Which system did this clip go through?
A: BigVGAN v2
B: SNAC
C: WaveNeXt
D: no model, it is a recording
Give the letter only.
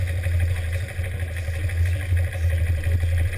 D